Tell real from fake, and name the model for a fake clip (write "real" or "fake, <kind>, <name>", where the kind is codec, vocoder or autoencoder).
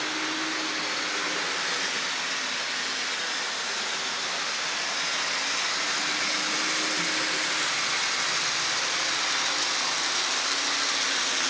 real